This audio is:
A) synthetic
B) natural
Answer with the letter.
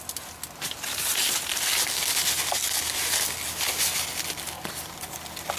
B